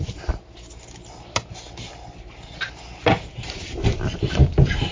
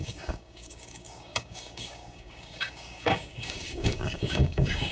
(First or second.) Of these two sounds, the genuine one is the first